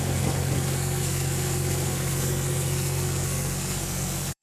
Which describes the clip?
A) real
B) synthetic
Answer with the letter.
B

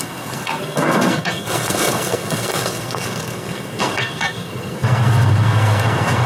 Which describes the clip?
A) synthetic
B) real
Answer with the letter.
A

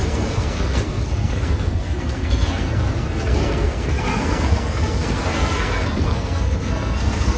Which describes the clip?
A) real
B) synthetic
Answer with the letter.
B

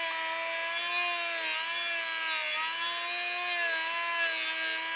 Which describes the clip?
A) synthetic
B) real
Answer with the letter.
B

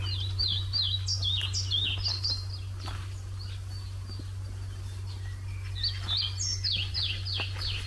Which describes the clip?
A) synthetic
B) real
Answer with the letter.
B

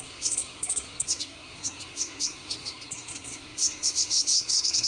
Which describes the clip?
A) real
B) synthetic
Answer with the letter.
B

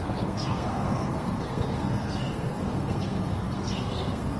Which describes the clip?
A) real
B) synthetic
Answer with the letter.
B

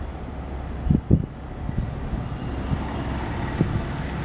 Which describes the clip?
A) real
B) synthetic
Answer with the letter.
A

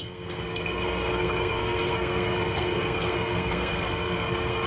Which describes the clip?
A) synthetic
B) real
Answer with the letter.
A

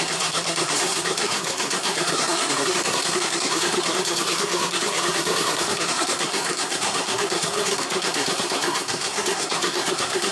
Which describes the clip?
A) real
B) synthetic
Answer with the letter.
B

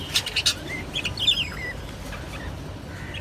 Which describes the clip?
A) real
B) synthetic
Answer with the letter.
A